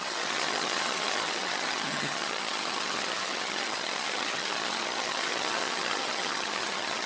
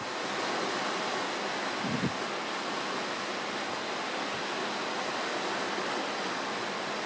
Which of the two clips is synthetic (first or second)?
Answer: first